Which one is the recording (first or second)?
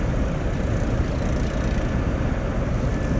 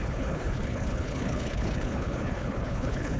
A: first